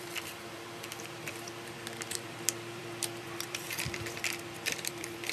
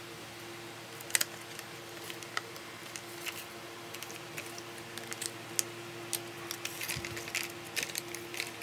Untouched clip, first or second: second